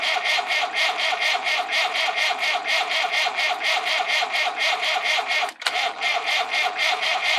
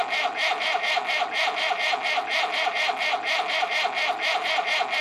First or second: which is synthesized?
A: first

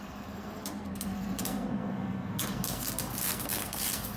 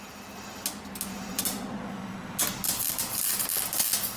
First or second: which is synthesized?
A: first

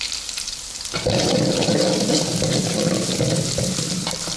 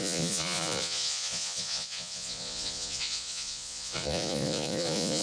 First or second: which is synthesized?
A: second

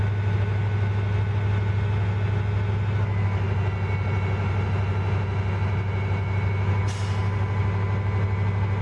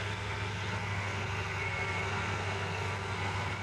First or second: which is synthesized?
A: second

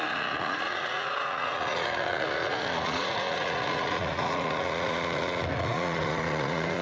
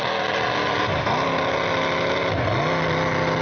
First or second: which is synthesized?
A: first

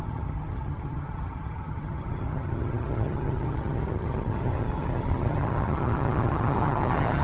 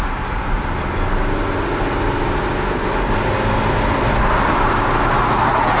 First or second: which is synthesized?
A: first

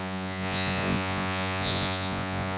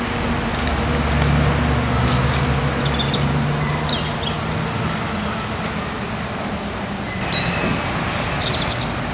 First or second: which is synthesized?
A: first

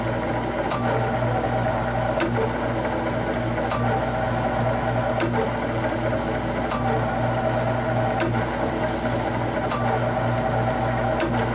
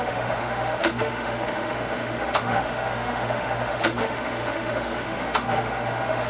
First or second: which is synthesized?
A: second